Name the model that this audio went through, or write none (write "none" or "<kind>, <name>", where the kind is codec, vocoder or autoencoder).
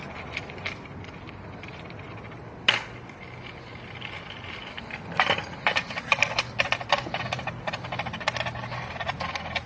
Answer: vocoder, BigVGAN v2